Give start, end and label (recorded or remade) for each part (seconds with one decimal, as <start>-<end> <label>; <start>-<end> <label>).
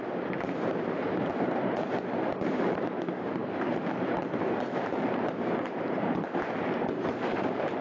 0.0-7.8 remade